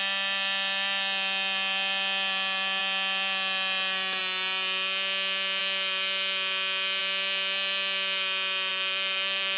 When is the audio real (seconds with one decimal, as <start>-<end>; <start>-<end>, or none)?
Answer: 0.0-8.7